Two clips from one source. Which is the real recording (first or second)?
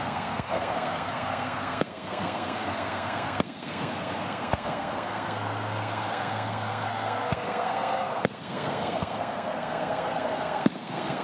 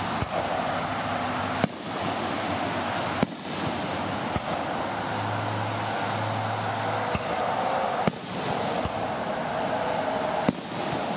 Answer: second